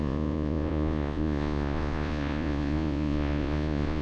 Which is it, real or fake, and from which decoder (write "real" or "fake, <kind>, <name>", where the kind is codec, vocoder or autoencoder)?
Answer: fake, vocoder, Vocos